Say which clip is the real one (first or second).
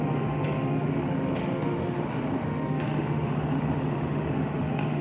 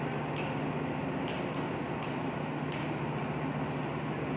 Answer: second